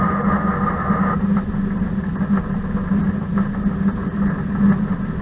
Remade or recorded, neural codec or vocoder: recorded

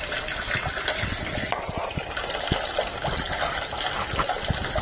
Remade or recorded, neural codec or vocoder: recorded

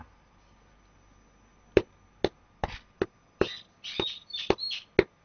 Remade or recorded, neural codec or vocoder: recorded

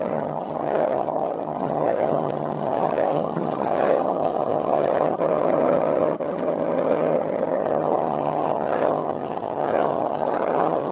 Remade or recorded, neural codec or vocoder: remade, vocoder, HiFi-GAN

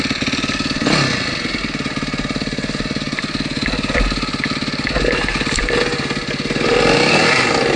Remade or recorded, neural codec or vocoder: recorded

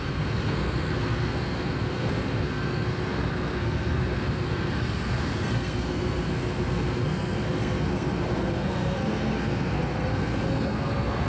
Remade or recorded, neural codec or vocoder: remade, codec, SNAC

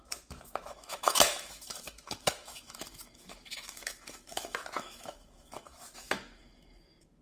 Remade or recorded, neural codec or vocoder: remade, autoencoder, DAC-VAE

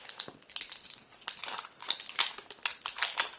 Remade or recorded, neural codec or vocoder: recorded